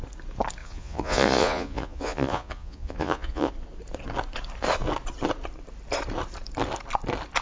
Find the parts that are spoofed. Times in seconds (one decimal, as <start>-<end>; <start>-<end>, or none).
0.6-3.5